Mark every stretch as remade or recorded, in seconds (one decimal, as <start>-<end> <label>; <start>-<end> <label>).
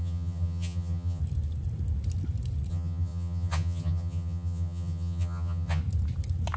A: 0.0-1.2 remade; 1.2-2.7 recorded; 2.7-5.8 remade; 5.8-6.6 recorded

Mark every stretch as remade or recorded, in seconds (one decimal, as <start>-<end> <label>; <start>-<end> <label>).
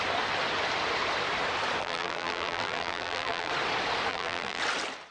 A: 0.0-1.8 recorded; 1.8-3.5 remade; 3.5-4.1 recorded; 4.1-4.6 remade; 4.6-5.1 recorded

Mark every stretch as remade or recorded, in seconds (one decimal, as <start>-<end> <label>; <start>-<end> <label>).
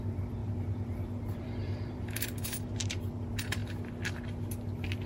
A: 0.0-3.6 remade; 3.6-5.1 recorded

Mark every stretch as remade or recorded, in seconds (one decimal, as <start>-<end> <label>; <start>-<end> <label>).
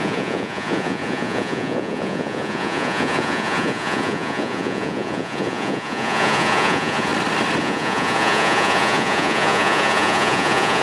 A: 0.0-7.1 remade; 7.1-7.6 recorded; 7.6-10.8 remade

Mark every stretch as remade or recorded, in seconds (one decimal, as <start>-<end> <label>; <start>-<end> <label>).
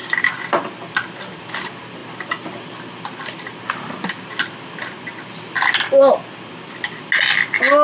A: 0.0-1.4 remade; 1.4-7.8 recorded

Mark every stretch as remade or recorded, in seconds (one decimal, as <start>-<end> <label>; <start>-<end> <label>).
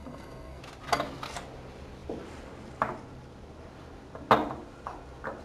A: 0.0-0.6 remade; 0.6-5.4 recorded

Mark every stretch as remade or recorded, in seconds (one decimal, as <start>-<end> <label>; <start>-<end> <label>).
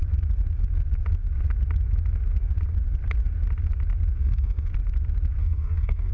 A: 0.0-4.2 recorded; 4.2-4.7 remade; 4.7-5.4 recorded; 5.4-6.1 remade